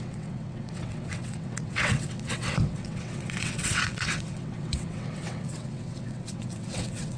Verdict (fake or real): fake